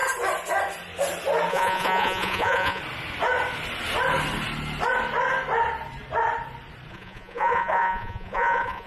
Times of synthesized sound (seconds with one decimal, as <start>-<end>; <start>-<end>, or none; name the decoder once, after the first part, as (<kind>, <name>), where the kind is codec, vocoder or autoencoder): 1.5-2.8 (vocoder, Vocos); 6.9-8.9